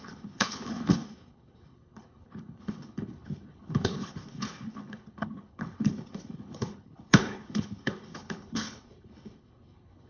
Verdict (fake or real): fake